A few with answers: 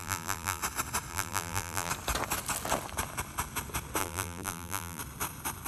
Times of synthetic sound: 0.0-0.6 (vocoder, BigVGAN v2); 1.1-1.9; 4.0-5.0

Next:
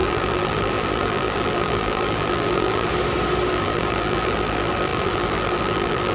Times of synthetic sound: 0.0-2.9 (vocoder, BigVGAN v2); 3.5-6.1